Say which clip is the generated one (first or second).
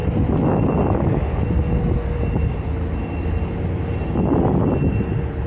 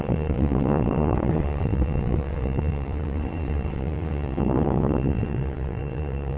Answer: second